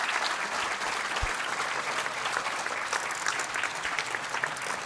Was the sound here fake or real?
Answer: real